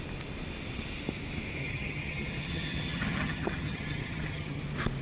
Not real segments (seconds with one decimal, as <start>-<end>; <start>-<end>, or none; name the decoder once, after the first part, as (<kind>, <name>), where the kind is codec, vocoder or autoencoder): 1.6-4.6 (vocoder, HiFi-GAN)